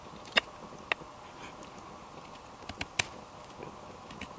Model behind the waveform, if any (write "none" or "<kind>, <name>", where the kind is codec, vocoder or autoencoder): none